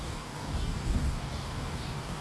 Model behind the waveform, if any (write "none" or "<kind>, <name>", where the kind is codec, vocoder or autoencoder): codec, DAC